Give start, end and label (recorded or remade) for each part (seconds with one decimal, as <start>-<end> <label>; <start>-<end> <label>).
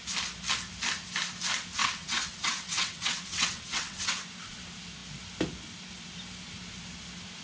0.0-1.8 recorded; 1.8-4.1 remade; 4.1-7.4 recorded